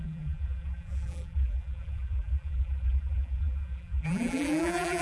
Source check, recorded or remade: remade